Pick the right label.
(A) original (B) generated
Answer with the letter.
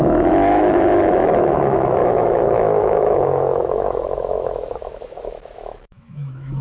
B